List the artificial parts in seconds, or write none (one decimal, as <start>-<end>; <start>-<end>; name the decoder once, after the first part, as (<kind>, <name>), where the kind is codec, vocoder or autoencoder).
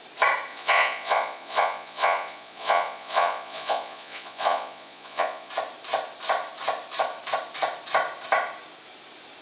0.5-5.5 (vocoder, Vocos)